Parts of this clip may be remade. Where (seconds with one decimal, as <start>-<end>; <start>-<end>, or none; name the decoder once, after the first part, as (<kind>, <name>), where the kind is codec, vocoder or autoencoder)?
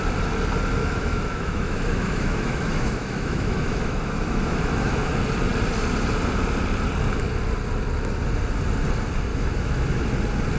0.8-5.1 (autoencoder, DAC-VAE); 9.3-10.0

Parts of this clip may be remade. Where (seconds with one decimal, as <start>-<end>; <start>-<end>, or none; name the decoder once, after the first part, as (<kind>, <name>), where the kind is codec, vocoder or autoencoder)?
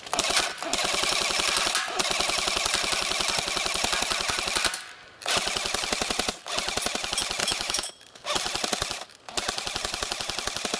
7.4-7.9 (autoencoder, DAC-VAE)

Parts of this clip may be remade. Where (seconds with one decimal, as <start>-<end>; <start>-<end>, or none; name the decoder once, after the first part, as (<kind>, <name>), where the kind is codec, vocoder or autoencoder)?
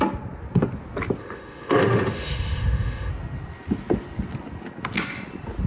1.2-3.1 (autoencoder, DAC-VAE)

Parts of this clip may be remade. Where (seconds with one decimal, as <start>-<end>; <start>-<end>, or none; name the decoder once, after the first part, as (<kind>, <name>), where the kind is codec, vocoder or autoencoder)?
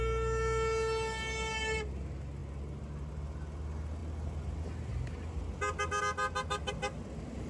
none